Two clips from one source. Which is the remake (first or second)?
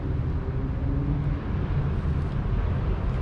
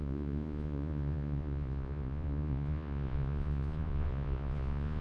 second